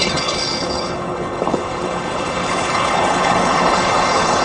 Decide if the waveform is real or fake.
fake